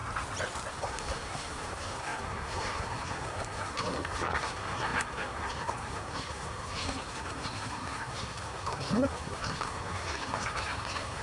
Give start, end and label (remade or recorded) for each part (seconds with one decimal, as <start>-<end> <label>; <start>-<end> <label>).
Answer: 0.0-0.7 recorded; 0.7-11.2 remade